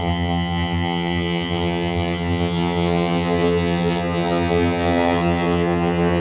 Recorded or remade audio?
remade